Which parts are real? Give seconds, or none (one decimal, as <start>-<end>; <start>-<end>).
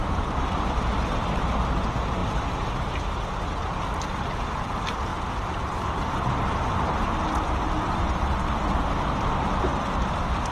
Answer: 1.4-10.5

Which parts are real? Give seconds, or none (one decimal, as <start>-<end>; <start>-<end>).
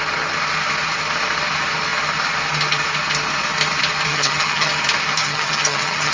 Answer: 0.0-4.1; 4.7-5.2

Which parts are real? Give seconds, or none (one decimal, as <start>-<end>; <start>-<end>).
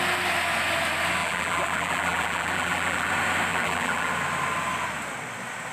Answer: 0.0-1.2; 3.1-3.5; 4.1-5.7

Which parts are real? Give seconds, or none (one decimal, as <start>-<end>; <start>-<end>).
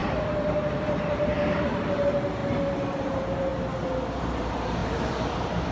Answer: 2.4-3.0; 3.5-4.2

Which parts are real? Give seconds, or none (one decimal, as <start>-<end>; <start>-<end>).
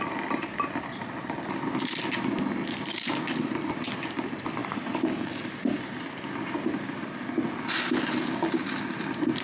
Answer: 0.0-9.4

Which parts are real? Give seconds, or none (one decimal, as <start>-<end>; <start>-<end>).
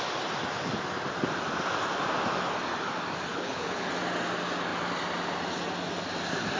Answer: 0.0-3.3; 3.9-6.6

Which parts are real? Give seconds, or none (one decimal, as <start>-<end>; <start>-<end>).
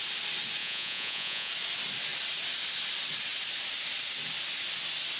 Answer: 0.0-0.6; 1.5-5.2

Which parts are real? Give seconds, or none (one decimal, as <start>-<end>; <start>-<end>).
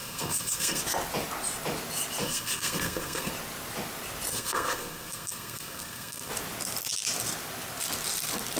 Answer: 0.8-2.2; 3.3-4.3; 6.3-8.6